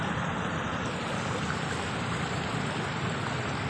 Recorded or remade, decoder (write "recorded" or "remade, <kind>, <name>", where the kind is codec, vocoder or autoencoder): recorded